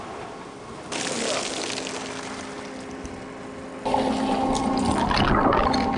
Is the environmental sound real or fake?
real